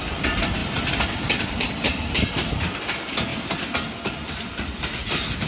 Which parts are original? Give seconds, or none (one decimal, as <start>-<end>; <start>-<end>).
0.0-0.6; 2.5-5.5